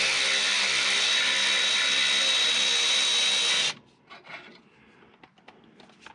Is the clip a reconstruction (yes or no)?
no